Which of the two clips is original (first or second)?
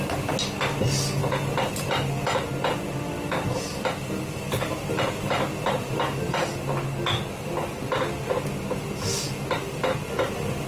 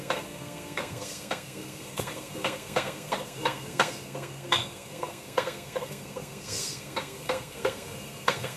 first